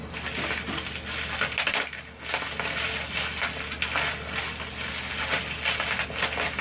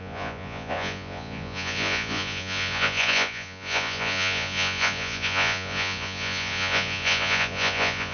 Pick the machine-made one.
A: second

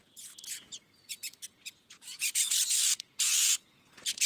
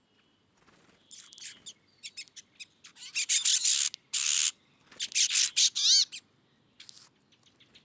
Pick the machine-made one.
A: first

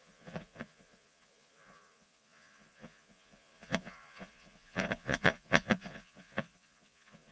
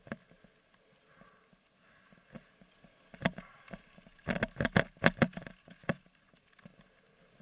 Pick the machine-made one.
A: first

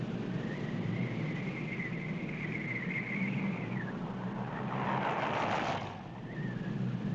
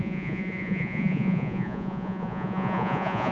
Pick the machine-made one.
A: second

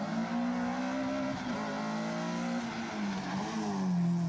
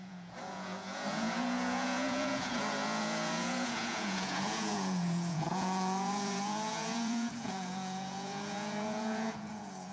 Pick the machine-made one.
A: second